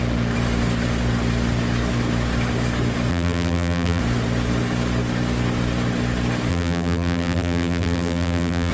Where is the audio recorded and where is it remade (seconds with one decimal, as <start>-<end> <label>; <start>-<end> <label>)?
0.0-3.1 recorded; 3.1-4.0 remade; 4.0-6.5 recorded; 6.5-8.7 remade